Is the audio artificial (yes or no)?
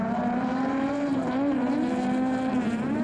yes